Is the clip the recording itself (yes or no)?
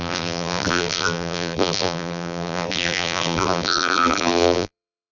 no